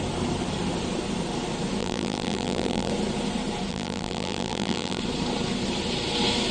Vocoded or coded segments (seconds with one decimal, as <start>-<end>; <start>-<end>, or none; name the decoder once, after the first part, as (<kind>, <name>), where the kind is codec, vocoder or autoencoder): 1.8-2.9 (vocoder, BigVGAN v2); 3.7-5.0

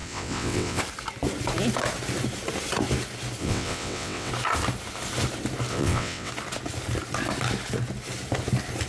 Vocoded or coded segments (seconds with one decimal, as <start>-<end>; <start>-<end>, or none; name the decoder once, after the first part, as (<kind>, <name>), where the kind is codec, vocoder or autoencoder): 0.0-0.8 (vocoder, WaveNeXt); 3.4-4.3; 5.7-6.3

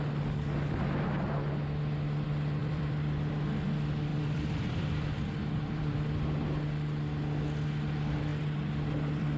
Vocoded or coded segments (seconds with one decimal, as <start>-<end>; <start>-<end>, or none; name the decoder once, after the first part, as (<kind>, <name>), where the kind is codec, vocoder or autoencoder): 2.6-3.3 (vocoder, BigVGAN v2); 4.1-6.6

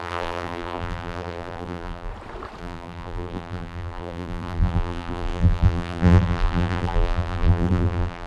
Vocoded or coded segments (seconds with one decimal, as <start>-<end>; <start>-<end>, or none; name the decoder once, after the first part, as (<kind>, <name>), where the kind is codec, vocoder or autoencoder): 0.0-2.1 (vocoder, BigVGAN v2); 2.6-8.3